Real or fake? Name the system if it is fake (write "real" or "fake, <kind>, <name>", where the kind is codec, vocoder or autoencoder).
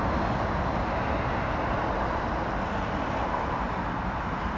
real